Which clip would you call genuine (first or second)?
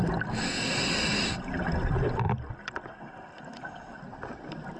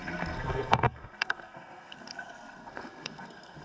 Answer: first